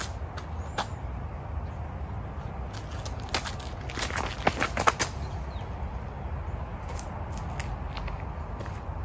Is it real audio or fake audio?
real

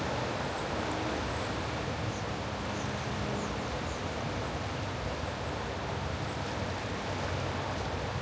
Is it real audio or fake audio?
real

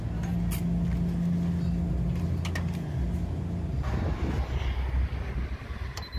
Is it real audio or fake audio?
real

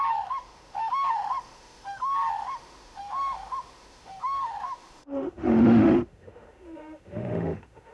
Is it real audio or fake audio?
fake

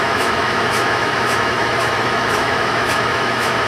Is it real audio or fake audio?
fake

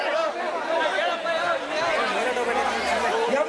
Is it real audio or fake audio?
real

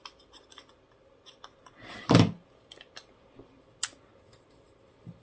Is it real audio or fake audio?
real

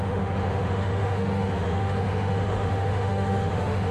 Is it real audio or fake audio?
fake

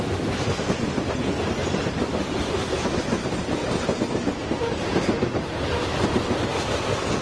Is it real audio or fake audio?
real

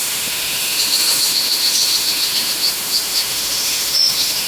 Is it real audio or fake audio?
fake